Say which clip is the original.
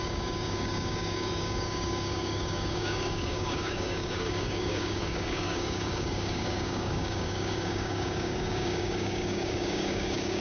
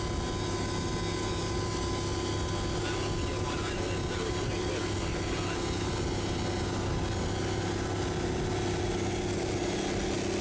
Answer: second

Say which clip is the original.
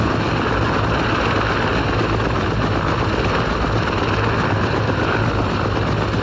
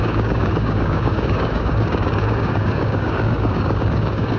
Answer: first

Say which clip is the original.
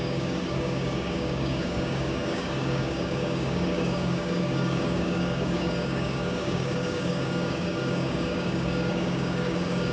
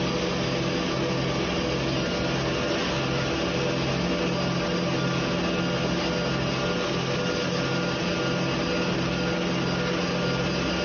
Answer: second